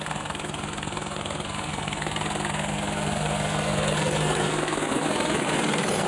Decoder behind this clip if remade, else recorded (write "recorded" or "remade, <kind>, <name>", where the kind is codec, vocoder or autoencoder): remade, codec, SNAC